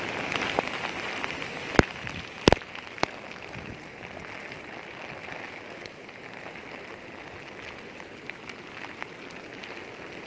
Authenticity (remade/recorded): recorded